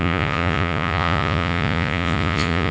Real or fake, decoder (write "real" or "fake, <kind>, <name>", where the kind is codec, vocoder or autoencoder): fake, vocoder, Vocos